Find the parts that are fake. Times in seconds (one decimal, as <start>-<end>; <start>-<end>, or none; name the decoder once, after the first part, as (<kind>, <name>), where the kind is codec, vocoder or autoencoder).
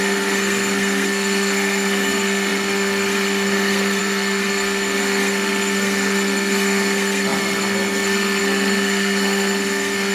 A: 0.0-10.1 (codec, SNAC)